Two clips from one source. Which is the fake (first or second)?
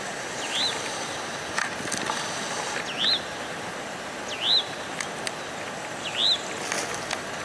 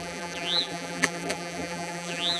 second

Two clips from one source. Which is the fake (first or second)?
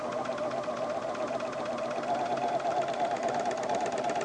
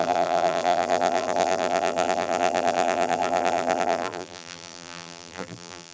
second